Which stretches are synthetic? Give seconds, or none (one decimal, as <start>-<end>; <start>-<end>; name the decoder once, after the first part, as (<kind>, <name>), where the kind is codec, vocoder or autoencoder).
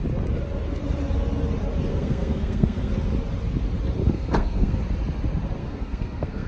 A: 1.9-2.9 (codec, SNAC); 4.0-4.8; 5.6-6.5